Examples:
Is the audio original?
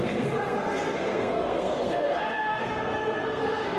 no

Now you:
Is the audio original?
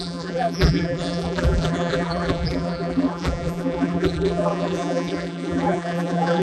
no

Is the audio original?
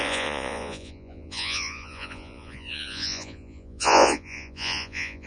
no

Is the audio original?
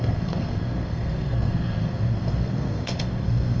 no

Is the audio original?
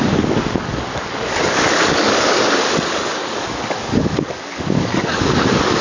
no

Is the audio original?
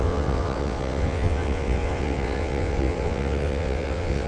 no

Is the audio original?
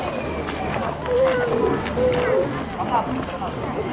yes